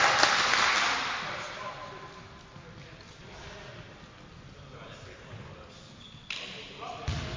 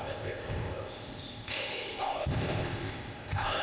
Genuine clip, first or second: first